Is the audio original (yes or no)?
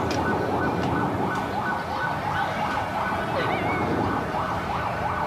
yes